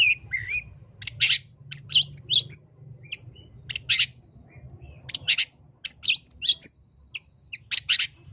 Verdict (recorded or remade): recorded